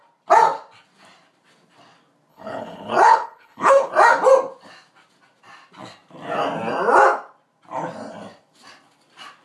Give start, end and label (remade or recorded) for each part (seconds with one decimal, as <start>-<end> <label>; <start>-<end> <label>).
0.0-2.3 recorded; 2.3-3.9 remade; 3.9-9.4 recorded